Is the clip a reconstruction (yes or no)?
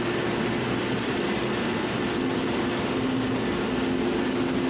no